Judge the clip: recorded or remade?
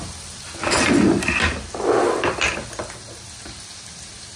recorded